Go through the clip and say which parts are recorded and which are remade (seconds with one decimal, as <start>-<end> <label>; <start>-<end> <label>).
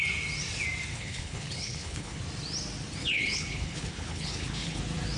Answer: 0.0-0.9 recorded; 0.9-2.2 remade; 2.2-3.0 recorded; 3.0-4.8 remade; 4.8-5.2 recorded